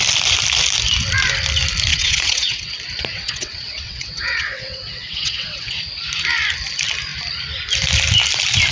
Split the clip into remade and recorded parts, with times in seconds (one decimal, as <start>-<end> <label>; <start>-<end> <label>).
0.0-1.9 recorded; 1.9-2.7 remade; 2.7-3.1 recorded; 3.1-5.8 remade; 5.8-8.7 recorded